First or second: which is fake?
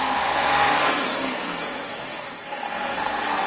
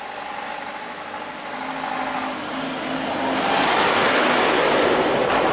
first